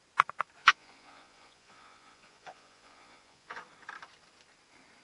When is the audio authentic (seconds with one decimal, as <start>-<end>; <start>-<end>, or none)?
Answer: 0.0-0.6; 3.6-5.0